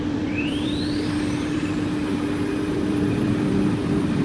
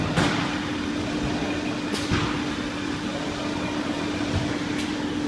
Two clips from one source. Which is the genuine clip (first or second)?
second